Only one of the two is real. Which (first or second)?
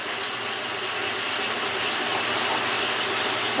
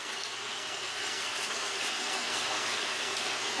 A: first